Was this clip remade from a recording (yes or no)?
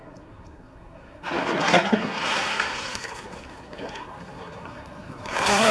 yes